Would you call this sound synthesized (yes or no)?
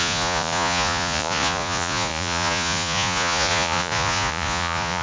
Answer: yes